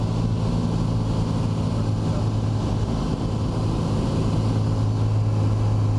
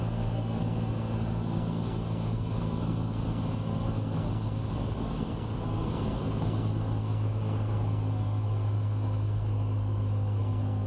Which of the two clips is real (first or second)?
first